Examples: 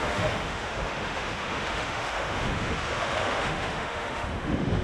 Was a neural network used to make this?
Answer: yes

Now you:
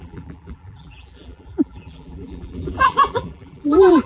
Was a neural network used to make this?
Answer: yes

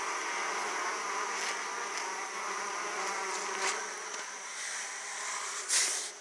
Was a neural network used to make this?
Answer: no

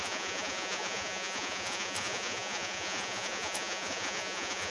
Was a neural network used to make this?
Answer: yes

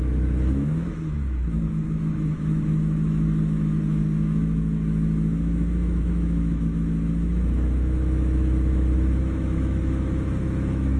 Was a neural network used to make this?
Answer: yes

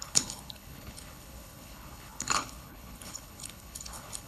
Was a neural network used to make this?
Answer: yes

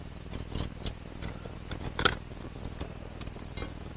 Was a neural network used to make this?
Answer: no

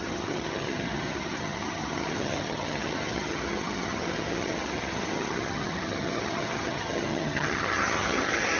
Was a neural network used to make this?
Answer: yes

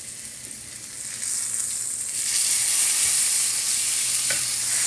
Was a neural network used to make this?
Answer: no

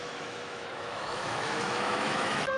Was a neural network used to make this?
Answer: yes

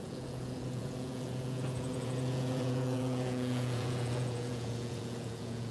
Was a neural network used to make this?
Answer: yes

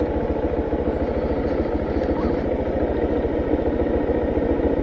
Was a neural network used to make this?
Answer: no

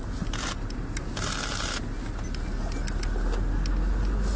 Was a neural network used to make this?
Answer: no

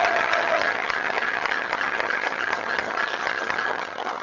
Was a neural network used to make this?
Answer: yes